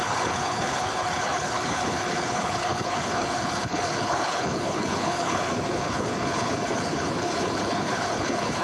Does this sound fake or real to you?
fake